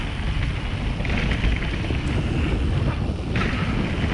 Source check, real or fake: real